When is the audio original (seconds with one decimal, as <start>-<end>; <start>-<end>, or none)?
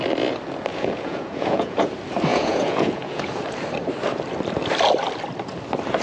0.0-0.7; 1.9-2.3; 3.3-6.0